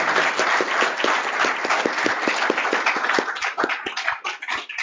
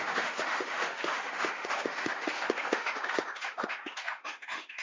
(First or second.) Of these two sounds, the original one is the first